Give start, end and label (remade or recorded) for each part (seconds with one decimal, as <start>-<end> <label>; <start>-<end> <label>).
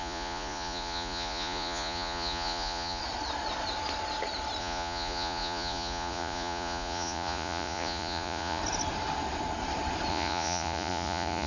0.0-3.0 remade; 3.0-4.6 recorded; 4.6-8.6 remade; 8.6-10.1 recorded; 10.1-11.5 remade